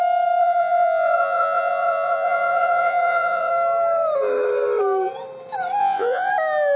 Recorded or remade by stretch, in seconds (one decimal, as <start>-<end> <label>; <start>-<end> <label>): 0.0-0.4 recorded; 0.4-3.5 remade; 3.5-5.8 recorded; 5.8-6.3 remade; 6.3-6.8 recorded